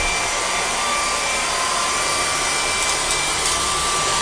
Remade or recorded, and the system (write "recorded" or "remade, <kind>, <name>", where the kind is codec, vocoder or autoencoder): recorded